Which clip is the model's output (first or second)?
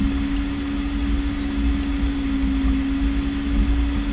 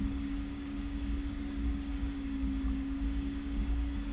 second